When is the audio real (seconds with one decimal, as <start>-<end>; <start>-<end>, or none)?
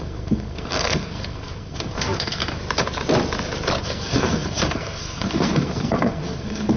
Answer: 2.4-3.8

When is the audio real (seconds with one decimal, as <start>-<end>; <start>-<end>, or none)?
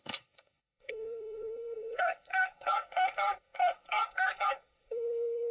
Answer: none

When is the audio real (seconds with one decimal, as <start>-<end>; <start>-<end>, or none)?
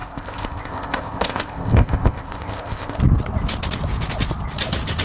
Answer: 3.0-5.0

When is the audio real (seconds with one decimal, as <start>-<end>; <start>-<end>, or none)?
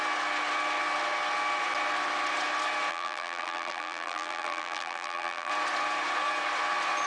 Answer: 0.0-2.9; 5.5-7.1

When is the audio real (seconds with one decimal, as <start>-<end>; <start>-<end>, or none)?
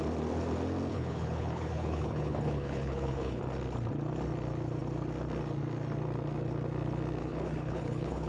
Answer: 0.0-0.9; 3.4-7.2